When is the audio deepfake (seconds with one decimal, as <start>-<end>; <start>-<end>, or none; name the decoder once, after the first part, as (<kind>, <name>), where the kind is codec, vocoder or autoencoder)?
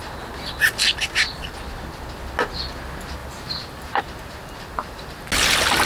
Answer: 3.2-4.0 (vocoder, BigVGAN v2)